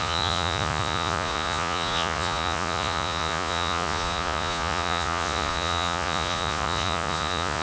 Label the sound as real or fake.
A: fake